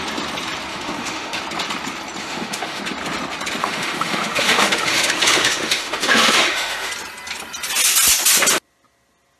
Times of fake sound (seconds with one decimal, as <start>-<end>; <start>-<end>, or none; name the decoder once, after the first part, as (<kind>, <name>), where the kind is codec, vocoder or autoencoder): 0.7-1.4 (autoencoder, DAC-VAE); 2.2-2.8; 3.6-6.9